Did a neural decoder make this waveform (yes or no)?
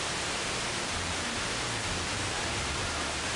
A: no